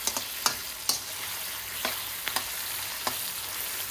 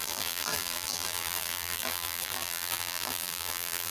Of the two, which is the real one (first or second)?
first